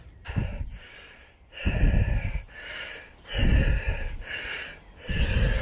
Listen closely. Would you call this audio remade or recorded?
recorded